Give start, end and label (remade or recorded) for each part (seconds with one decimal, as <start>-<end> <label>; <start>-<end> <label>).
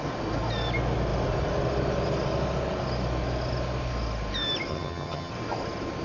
0.0-4.7 recorded; 4.7-5.3 remade; 5.3-6.0 recorded